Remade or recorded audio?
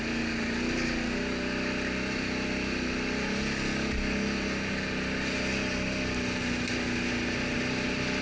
recorded